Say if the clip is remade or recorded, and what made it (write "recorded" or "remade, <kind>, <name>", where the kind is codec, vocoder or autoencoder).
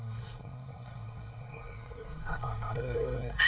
remade, codec, SNAC